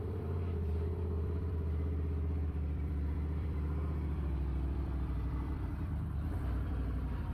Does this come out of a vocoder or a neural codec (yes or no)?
yes